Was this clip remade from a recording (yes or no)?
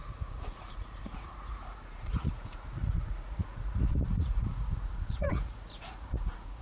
yes